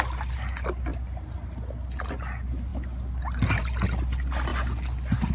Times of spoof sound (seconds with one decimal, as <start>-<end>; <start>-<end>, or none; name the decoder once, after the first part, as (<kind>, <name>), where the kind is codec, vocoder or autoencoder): none